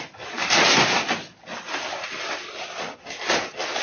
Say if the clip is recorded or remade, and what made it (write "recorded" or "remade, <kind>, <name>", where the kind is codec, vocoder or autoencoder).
recorded